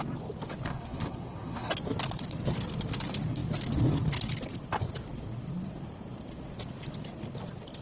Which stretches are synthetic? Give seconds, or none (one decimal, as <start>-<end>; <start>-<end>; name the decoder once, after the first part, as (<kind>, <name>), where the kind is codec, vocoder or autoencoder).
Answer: 0.7-1.7 (codec, SNAC)